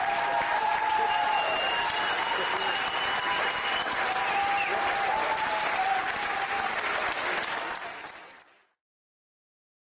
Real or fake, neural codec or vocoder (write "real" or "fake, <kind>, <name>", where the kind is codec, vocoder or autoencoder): real